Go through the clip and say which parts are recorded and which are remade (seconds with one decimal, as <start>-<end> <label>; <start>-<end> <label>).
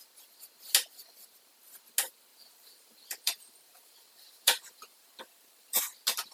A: 0.0-2.3 recorded; 2.3-5.8 remade; 5.8-6.3 recorded